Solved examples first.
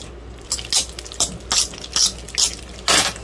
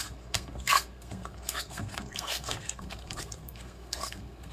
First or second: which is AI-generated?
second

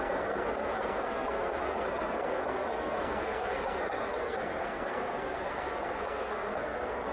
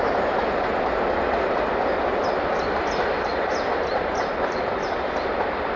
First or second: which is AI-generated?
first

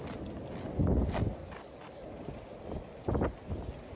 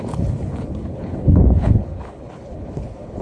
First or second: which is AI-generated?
second